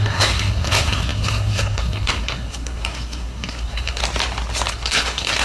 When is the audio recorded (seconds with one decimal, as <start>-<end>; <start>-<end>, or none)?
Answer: 4.0-4.7